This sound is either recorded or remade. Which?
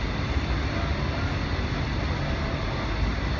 recorded